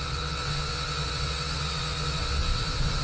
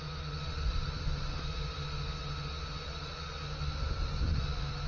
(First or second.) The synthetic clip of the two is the first